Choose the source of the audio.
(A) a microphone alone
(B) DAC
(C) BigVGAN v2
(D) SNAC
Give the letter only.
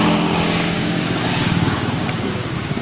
B